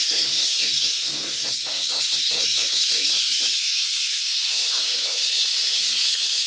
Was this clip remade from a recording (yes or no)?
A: yes